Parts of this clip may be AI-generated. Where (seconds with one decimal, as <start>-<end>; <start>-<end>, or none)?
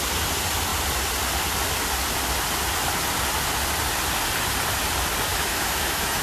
5.3-6.2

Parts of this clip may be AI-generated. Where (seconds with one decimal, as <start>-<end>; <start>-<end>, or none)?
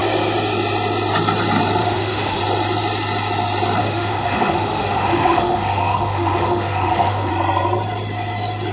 1.8-2.4; 3.8-7.3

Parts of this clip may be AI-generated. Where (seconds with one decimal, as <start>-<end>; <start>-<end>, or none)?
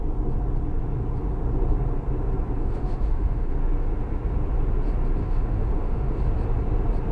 2.6-3.5; 5.2-6.2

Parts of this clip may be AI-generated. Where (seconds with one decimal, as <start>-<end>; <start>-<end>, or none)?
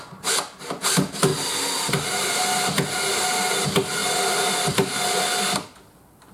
none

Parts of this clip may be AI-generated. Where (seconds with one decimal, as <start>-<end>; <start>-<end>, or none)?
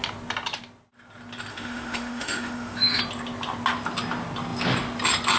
1.5-3.0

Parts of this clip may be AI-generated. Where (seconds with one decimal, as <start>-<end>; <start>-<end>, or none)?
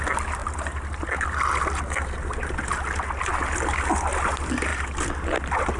none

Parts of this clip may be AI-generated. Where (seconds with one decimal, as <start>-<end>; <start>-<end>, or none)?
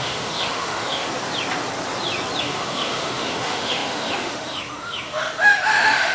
0.0-1.1; 2.4-6.1